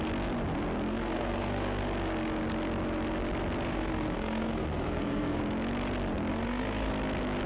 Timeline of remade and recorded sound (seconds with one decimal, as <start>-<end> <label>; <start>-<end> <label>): 0.0-0.9 recorded; 0.9-1.8 remade; 1.8-3.7 recorded; 3.7-5.4 remade; 5.4-6.3 recorded; 6.3-6.9 remade; 6.9-7.5 recorded